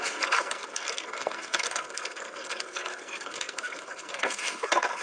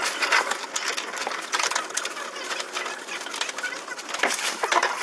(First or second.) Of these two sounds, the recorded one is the second